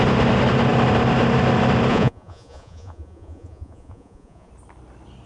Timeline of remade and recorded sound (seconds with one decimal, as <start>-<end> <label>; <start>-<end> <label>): 0.0-1.9 recorded; 1.9-4.5 remade; 4.5-5.3 recorded